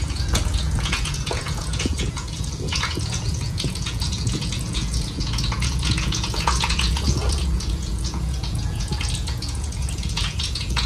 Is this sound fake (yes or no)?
yes